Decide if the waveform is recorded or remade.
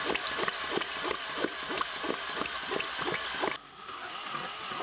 recorded